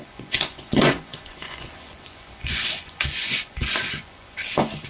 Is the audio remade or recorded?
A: remade